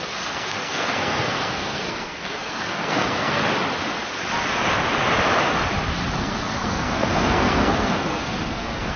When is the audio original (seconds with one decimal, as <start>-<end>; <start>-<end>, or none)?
3.4-6.2